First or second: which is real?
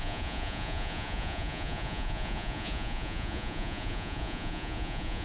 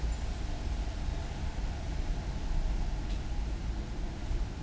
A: second